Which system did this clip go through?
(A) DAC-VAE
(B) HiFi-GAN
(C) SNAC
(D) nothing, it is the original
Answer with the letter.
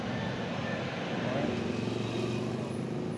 D